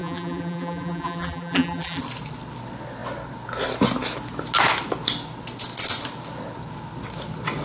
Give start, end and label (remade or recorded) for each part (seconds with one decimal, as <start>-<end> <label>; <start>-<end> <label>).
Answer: 0.0-2.0 remade; 2.0-7.6 recorded